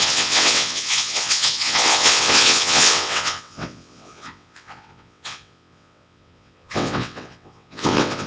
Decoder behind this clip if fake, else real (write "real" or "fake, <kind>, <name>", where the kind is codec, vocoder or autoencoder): fake, vocoder, WaveNeXt